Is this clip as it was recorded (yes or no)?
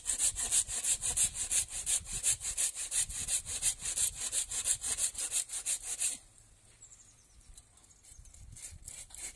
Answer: yes